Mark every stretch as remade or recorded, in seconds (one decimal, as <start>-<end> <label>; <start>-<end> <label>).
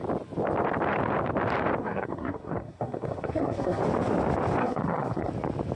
0.0-1.8 recorded; 1.8-3.8 remade; 3.8-4.6 recorded; 4.6-5.3 remade; 5.3-5.8 recorded